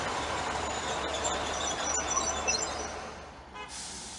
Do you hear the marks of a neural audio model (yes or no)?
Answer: no